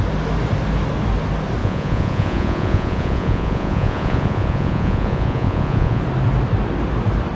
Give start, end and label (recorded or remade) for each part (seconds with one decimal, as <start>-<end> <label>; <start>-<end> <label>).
0.0-1.6 recorded; 1.6-6.0 remade; 6.0-7.3 recorded

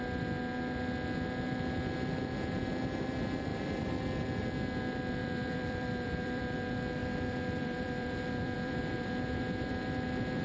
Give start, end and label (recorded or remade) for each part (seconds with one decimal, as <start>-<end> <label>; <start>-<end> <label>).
0.0-3.5 recorded; 3.5-4.0 remade; 4.0-5.2 recorded; 5.2-6.6 remade; 6.6-7.0 recorded; 7.0-9.4 remade; 9.4-10.4 recorded

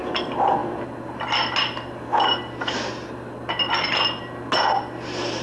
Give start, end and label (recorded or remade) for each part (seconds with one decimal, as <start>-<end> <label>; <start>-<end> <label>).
0.0-5.4 recorded

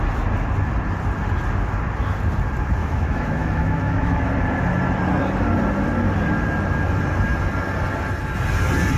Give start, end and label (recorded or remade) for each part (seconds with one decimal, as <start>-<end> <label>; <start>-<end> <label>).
0.0-2.8 recorded; 2.8-4.3 remade; 4.3-9.0 recorded

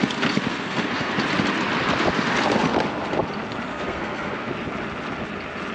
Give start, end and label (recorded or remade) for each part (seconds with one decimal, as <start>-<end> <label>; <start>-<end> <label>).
0.0-0.5 recorded; 0.5-1.1 remade; 1.1-3.7 recorded; 3.7-4.5 remade; 4.5-5.7 recorded